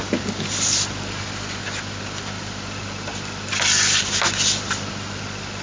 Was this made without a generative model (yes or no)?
yes